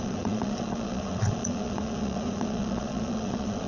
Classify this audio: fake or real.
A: fake